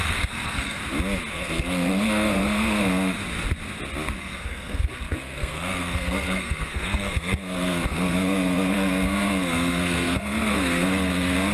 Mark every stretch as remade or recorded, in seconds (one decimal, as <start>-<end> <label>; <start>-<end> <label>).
0.0-0.8 remade; 0.8-1.3 recorded; 1.3-3.2 remade; 3.2-4.2 recorded; 4.2-11.5 remade